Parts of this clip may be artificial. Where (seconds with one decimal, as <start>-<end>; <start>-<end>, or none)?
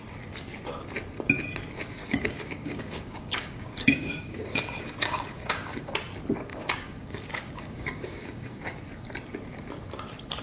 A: 2.0-5.9; 6.5-8.6